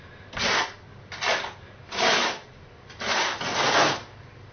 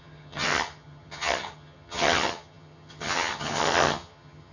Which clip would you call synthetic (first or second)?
second